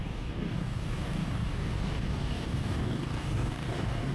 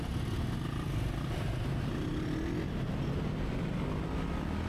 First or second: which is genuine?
second